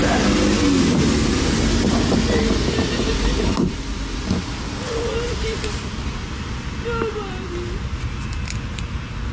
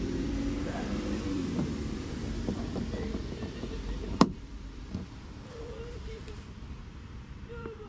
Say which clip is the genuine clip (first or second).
first